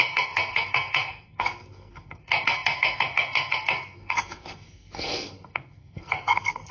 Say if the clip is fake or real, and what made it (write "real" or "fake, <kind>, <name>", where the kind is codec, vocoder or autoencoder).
fake, codec, SNAC